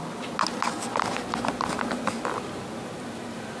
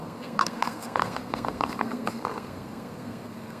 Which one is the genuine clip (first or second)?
first